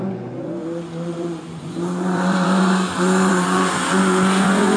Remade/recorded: remade